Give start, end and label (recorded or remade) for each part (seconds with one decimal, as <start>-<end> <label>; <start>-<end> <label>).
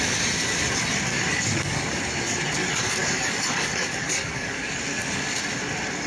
0.0-1.1 recorded; 1.1-2.0 remade; 2.0-2.6 recorded; 2.6-4.8 remade; 4.8-6.1 recorded